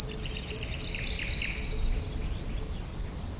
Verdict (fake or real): real